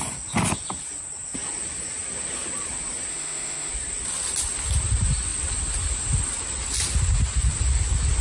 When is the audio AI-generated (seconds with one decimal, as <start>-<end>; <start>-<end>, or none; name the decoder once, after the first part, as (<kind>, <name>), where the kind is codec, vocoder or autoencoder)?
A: 3.1-3.7 (autoencoder, DAC-VAE)